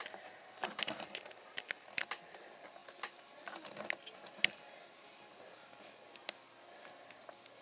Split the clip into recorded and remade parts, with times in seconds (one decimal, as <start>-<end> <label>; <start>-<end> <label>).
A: 0.0-7.6 recorded